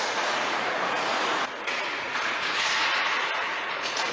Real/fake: fake